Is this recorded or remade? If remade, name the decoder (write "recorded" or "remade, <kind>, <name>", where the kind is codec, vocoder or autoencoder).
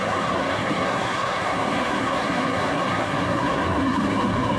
remade, codec, SNAC